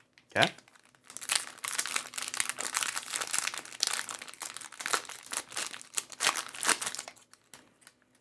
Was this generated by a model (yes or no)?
no